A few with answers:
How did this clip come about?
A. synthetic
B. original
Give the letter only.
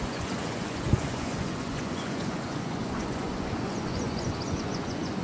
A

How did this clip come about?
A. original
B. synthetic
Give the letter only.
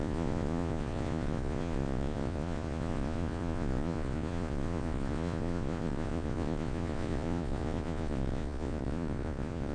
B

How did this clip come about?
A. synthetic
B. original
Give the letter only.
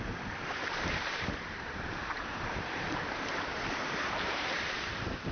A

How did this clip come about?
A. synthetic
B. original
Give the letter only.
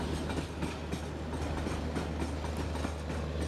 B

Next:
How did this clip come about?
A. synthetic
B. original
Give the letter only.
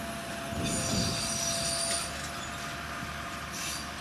B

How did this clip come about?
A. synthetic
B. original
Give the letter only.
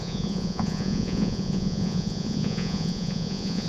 A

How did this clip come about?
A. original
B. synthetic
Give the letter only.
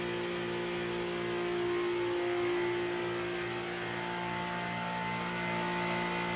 A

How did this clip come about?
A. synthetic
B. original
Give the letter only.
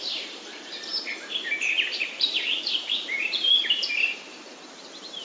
A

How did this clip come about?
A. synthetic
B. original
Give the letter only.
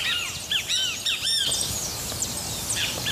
B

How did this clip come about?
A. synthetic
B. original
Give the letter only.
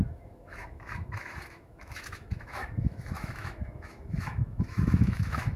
A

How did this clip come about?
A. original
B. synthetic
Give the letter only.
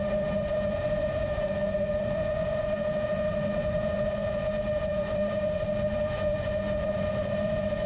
B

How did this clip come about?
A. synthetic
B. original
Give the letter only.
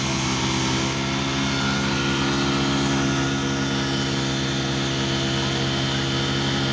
B